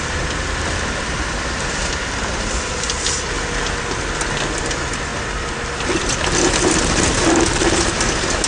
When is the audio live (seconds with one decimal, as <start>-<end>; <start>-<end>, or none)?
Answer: 0.0-8.5